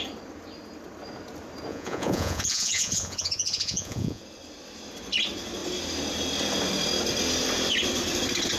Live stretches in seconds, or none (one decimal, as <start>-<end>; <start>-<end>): 0.0-1.7; 4.2-8.6